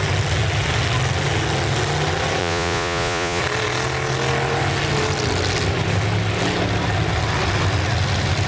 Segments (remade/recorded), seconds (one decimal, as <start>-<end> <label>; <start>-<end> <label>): 0.0-2.4 recorded; 2.4-3.4 remade; 3.4-8.5 recorded